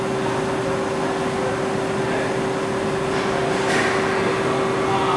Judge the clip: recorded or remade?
recorded